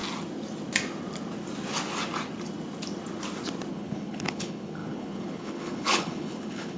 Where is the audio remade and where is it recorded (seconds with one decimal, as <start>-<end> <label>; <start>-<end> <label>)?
0.0-3.7 recorded; 3.7-6.8 remade